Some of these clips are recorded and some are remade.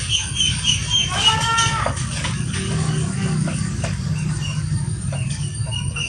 remade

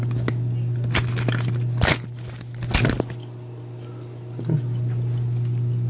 recorded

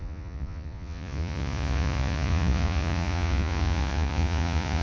remade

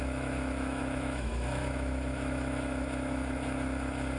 remade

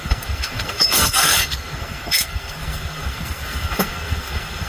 remade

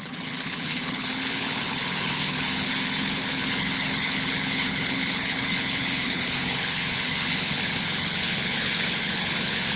remade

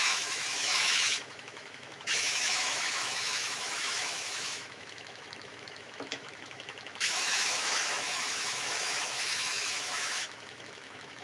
remade